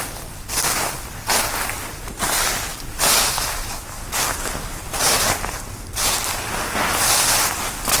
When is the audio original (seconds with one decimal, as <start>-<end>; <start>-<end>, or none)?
0.0-8.0